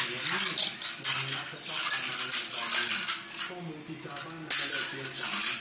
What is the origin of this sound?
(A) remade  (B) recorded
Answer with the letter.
B